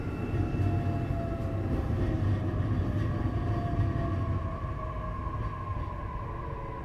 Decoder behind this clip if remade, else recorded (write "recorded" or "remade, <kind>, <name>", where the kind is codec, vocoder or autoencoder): recorded